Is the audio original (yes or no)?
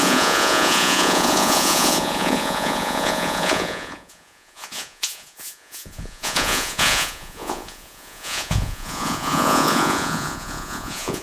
no